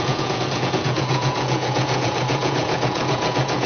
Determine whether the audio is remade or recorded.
remade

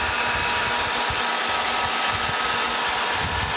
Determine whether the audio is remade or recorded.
recorded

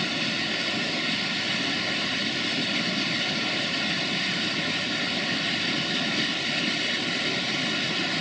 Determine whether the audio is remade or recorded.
recorded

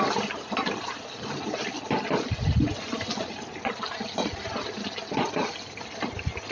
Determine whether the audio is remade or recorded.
recorded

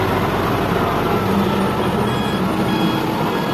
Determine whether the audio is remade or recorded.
recorded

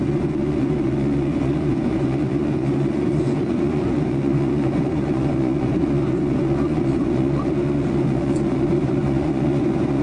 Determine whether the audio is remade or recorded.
remade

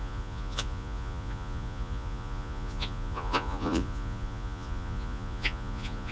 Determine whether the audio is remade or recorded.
remade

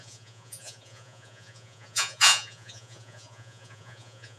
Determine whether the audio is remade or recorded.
remade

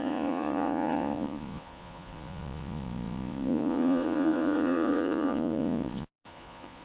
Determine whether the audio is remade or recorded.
remade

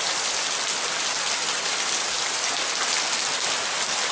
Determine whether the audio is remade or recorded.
recorded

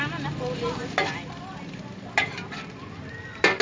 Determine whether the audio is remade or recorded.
recorded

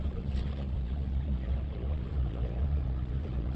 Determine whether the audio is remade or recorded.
remade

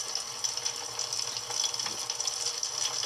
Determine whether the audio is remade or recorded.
recorded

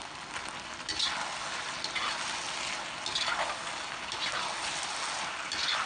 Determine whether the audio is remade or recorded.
recorded